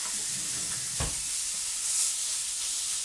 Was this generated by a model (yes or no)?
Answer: no